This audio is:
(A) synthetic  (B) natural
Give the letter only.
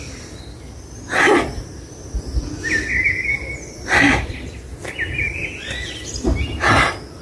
B